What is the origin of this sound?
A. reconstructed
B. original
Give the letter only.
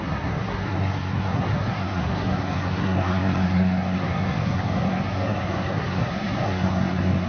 A